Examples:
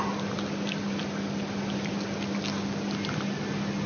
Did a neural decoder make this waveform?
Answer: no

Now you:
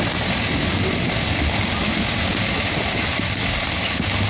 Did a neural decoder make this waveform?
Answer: no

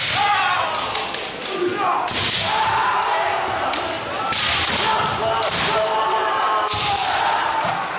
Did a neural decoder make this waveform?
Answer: no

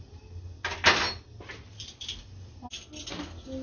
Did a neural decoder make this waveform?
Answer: no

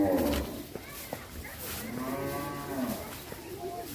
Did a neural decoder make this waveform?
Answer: no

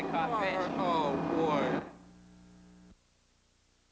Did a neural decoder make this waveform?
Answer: no